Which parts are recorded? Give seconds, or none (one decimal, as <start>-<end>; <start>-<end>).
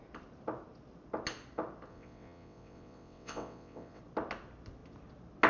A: 0.0-1.9; 4.0-5.5